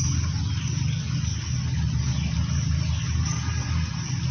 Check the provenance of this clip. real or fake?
real